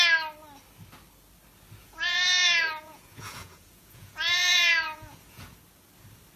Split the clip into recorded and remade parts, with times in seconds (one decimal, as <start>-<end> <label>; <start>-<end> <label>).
0.0-1.8 recorded; 1.8-5.6 remade; 5.6-6.4 recorded